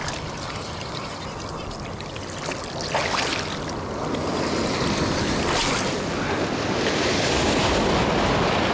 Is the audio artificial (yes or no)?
no